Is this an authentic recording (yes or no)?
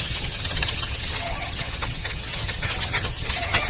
no